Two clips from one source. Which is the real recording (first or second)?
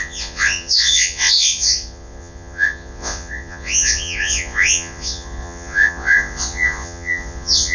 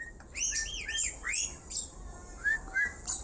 second